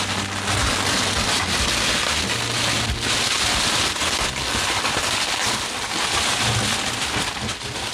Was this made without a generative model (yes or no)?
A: yes